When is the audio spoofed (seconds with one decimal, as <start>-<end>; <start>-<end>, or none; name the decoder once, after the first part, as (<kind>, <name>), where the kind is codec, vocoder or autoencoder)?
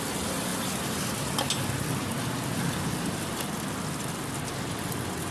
none